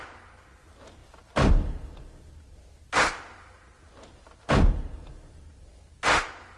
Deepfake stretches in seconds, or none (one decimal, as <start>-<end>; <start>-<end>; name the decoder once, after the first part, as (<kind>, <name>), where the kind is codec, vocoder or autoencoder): none